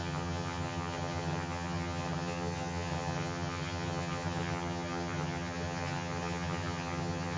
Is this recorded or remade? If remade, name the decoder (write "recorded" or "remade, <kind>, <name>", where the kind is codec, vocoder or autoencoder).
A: remade, vocoder, HiFi-GAN